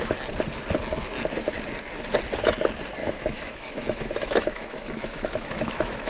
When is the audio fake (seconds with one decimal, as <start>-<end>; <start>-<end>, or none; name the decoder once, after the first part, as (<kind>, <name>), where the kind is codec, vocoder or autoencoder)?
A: 3.0-6.1 (autoencoder, DAC-VAE)